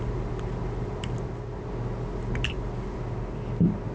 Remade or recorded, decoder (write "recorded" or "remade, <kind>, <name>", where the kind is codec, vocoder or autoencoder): recorded